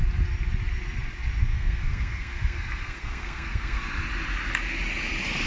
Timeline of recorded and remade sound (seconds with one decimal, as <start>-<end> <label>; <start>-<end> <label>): 0.0-1.4 recorded; 1.4-3.8 remade; 3.8-5.5 recorded